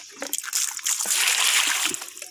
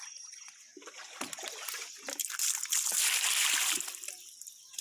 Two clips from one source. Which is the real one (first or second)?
first